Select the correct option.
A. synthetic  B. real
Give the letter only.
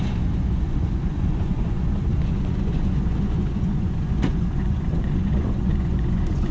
A